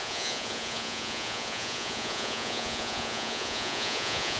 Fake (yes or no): yes